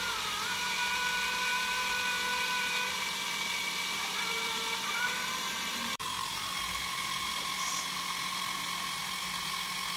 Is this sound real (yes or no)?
no